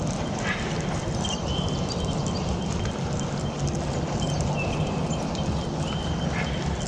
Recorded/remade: recorded